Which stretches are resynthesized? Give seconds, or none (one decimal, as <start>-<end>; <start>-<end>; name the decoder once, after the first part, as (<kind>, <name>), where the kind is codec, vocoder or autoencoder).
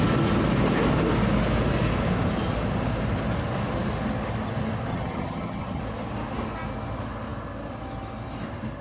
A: 4.9-5.8 (vocoder, HiFi-GAN)